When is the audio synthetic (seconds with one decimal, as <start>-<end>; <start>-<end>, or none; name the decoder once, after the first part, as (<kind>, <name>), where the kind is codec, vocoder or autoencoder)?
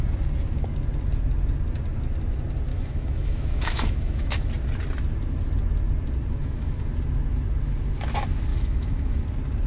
2.7-4.5 (autoencoder, DAC-VAE); 6.4-6.9; 8.5-9.2